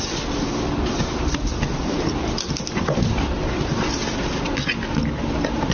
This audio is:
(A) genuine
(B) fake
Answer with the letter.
A